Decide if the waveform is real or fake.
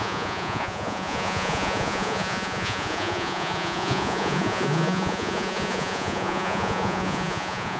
fake